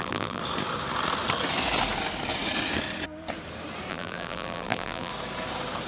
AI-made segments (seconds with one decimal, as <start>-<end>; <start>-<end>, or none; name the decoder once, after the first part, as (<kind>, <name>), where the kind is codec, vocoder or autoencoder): 0.0-0.4 (vocoder, BigVGAN v2); 3.9-5.1